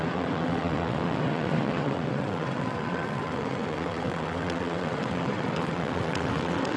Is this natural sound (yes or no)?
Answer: no